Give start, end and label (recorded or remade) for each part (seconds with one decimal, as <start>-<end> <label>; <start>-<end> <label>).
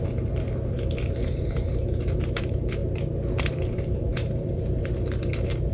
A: 0.0-2.8 remade; 2.8-3.4 recorded; 3.4-5.7 remade